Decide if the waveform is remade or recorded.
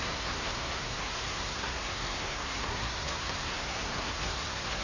remade